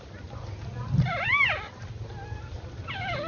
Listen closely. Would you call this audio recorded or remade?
recorded